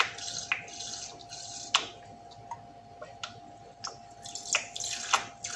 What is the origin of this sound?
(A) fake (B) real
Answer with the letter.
B